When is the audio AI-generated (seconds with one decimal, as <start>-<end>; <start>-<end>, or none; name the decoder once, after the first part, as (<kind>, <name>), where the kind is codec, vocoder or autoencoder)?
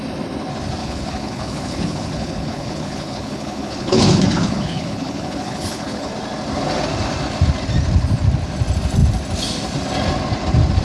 0.8-6.1 (codec, HILCodec)